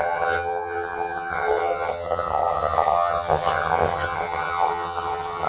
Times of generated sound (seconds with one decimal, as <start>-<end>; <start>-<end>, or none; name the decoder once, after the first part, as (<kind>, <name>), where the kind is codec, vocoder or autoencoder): 0.0-5.5 (vocoder, HiFi-GAN)